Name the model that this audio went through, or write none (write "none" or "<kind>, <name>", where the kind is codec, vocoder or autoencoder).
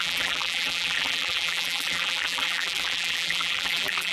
vocoder, BigVGAN v2